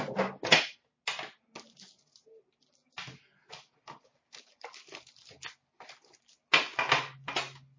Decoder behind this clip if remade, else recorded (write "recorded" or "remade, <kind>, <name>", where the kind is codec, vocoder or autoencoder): recorded